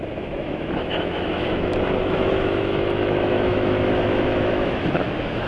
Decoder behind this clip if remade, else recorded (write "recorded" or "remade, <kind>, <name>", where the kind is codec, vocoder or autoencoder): remade, autoencoder, DAC-VAE